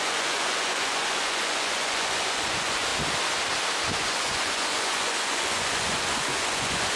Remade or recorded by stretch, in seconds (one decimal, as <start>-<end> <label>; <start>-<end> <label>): 0.0-2.9 remade; 2.9-3.9 recorded; 3.9-7.0 remade